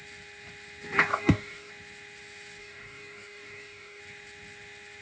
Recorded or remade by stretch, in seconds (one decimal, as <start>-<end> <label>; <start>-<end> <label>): 0.0-1.1 recorded; 1.1-1.7 remade; 1.7-2.6 recorded; 2.6-4.0 remade; 4.0-5.0 recorded